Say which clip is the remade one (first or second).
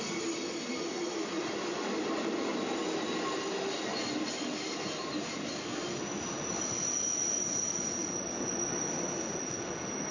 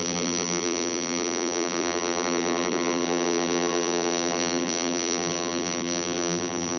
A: second